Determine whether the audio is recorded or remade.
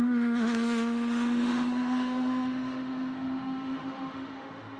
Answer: remade